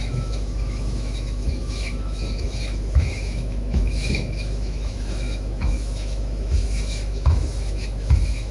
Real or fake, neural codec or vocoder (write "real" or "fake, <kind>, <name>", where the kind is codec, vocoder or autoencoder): fake, autoencoder, DAC-VAE